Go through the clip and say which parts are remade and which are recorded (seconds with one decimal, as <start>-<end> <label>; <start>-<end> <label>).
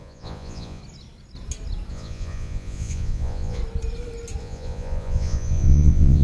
0.0-0.8 remade; 0.8-1.9 recorded; 1.9-3.6 remade; 3.6-4.4 recorded; 4.4-6.2 remade